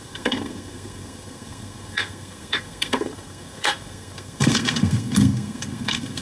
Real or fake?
fake